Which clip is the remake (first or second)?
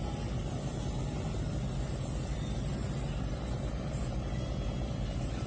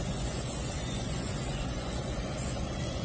second